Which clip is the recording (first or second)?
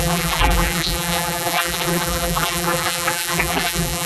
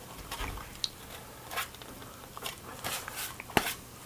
second